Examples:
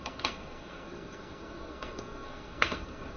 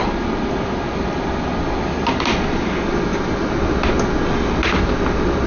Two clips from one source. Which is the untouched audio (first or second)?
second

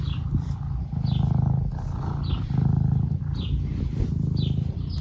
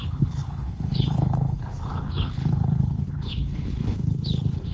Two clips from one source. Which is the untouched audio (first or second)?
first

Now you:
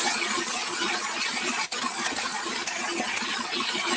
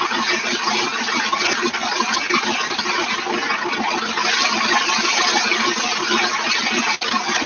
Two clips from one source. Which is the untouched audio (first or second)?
second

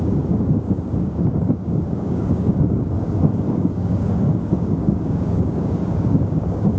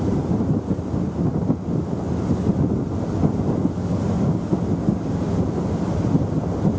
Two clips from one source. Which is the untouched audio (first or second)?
second